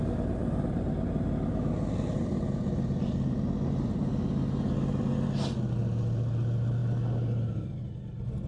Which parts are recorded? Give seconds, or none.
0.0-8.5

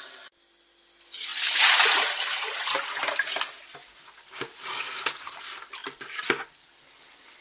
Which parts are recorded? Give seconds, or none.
0.0-7.4

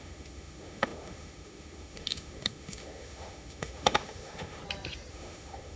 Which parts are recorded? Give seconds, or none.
4.6-5.1

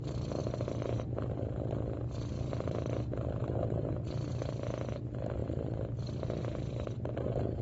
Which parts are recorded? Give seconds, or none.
0.0-0.4; 3.0-5.4; 6.4-7.6